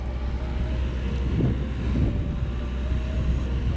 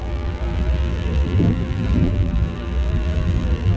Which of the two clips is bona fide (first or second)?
first